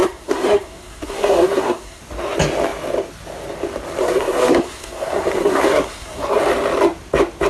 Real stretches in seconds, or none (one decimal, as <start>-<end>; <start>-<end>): 2.0-4.0; 6.4-7.5